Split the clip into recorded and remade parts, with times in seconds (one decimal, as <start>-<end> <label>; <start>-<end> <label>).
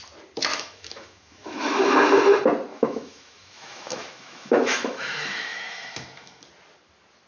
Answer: 0.0-0.5 recorded; 0.5-1.8 remade; 1.8-2.7 recorded; 2.7-6.4 remade; 6.4-7.3 recorded